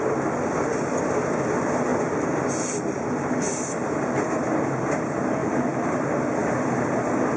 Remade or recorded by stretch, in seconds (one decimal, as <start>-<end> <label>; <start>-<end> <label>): 0.0-5.4 recorded; 5.4-6.0 remade; 6.0-6.4 recorded; 6.4-7.0 remade; 7.0-7.4 recorded